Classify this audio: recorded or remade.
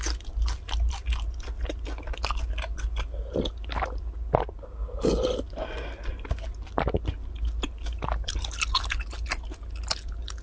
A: recorded